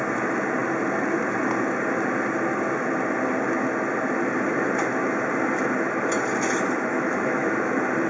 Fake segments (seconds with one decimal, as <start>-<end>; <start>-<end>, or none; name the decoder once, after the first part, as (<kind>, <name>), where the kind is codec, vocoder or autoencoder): 6.9-7.5 (autoencoder, DAC-VAE)

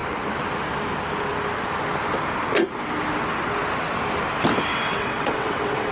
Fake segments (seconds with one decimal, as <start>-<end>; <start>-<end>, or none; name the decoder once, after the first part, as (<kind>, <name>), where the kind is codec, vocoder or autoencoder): 4.7-5.9 (vocoder, WaveNeXt)

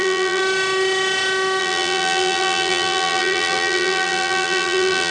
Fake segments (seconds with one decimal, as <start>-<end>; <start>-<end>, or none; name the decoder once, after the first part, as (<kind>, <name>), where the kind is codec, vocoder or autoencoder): 0.0-0.4 (vocoder, BigVGAN v2); 1.6-5.1

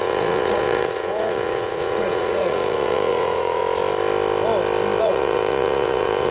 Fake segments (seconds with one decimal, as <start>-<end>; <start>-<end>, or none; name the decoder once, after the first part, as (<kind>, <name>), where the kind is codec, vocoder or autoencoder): 0.0-3.6 (vocoder, Vocos); 5.0-6.3